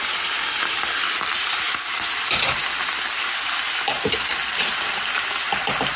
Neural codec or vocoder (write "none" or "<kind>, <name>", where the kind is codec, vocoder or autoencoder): none